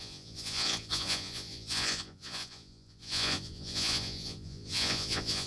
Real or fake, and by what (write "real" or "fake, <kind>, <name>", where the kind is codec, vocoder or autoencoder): fake, vocoder, Vocos